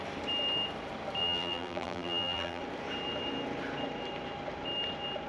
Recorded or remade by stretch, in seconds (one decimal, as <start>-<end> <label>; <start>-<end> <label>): 0.0-1.2 recorded; 1.2-2.6 remade; 2.6-5.3 recorded